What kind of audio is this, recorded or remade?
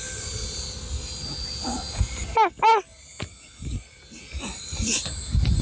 recorded